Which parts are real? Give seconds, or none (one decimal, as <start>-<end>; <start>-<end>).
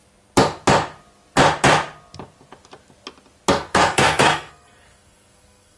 0.0-3.5